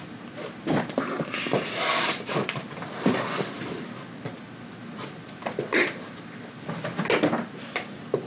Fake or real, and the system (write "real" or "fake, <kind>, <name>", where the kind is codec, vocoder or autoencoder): real